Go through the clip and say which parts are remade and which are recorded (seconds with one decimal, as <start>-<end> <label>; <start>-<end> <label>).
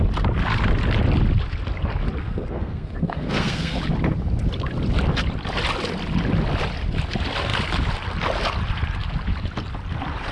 0.0-2.2 recorded; 2.2-3.8 remade; 3.8-10.3 recorded